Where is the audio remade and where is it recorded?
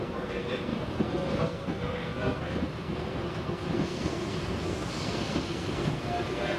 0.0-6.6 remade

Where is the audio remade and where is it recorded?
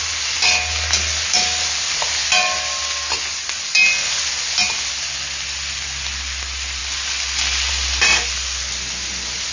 0.0-9.5 recorded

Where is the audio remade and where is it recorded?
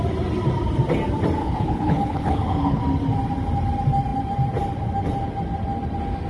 0.0-1.4 recorded; 1.4-2.8 remade; 2.8-6.3 recorded